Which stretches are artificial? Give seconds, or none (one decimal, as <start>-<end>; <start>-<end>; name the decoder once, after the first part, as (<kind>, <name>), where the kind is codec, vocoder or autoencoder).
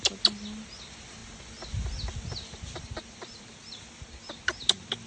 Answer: none